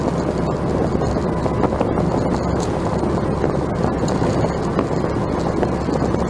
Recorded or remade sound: recorded